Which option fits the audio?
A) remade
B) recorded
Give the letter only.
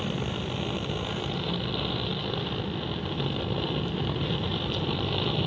B